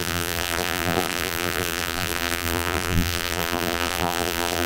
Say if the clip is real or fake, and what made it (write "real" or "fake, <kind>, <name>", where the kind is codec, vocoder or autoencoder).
fake, vocoder, BigVGAN v2